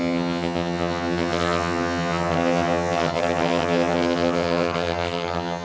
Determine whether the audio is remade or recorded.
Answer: remade